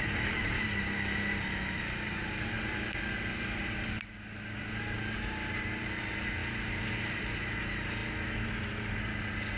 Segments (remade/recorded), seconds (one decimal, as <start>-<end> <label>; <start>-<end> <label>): 0.0-9.6 recorded

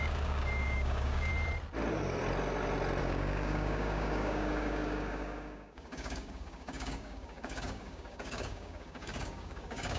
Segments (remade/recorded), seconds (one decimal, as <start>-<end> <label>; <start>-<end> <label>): 0.0-1.3 remade; 1.3-3.0 recorded; 3.0-10.0 remade

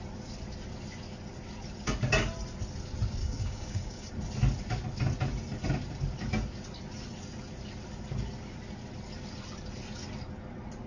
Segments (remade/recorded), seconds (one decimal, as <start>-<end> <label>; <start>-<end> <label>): 0.0-3.2 recorded; 3.2-4.1 remade; 4.1-10.9 recorded

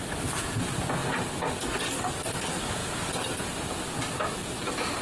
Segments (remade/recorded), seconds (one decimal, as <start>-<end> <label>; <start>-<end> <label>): 0.0-5.0 recorded

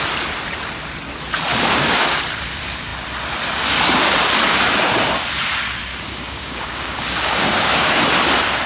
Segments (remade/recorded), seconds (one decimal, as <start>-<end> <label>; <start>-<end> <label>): 0.0-1.5 recorded; 1.5-2.2 remade; 2.2-5.9 recorded; 5.9-8.0 remade; 8.0-8.7 recorded

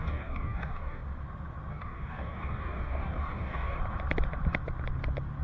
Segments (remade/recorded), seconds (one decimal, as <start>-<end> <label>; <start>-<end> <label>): 0.0-1.0 remade; 1.0-1.7 recorded; 1.7-3.8 remade; 3.8-5.4 recorded